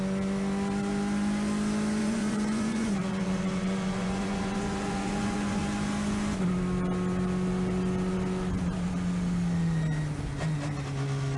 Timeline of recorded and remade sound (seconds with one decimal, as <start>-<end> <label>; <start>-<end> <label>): 0.0-2.0 recorded; 2.0-5.6 remade; 5.6-11.4 recorded